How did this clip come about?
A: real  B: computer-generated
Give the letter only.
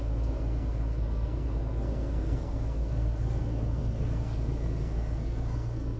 B